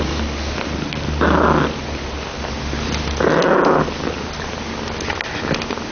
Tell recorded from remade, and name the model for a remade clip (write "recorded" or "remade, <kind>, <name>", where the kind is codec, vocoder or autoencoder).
recorded